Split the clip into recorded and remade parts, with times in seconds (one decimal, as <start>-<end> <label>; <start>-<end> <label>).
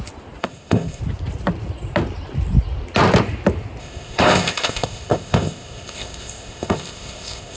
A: 0.0-0.4 recorded; 0.4-1.0 remade; 1.0-3.8 recorded; 3.8-7.6 remade